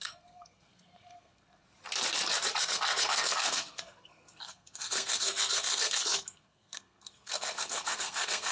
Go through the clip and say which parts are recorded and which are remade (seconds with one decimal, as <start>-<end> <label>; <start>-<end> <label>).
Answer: 0.0-1.6 remade; 1.6-2.6 recorded; 2.6-8.5 remade